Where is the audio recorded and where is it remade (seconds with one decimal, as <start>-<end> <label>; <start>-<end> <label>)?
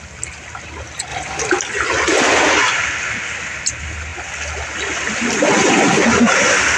0.0-6.8 recorded